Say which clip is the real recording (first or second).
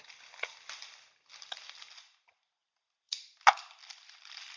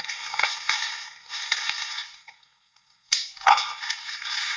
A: first